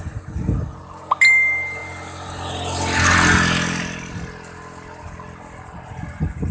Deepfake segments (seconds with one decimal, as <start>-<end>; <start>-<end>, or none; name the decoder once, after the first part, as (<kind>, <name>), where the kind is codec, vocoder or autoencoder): none